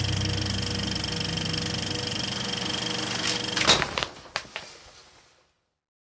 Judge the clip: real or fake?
real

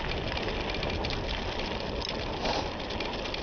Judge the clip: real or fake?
real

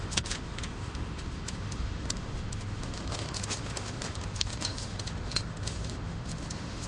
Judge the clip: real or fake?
fake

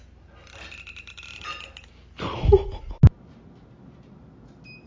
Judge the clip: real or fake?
real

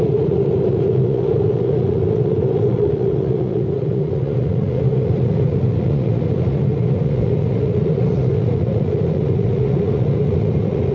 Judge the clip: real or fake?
fake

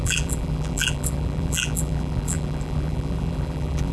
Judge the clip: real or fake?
fake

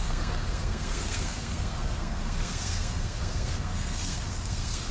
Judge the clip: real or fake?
fake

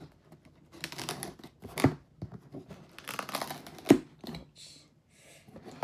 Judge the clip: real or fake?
real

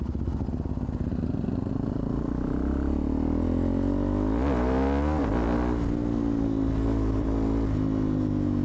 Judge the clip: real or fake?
real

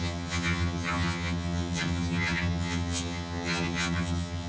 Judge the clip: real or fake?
fake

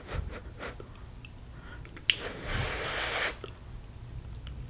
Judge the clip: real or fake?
real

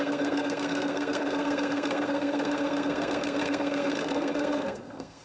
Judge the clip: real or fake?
fake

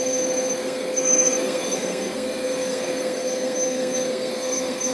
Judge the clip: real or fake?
fake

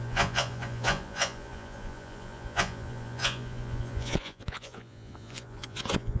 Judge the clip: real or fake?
fake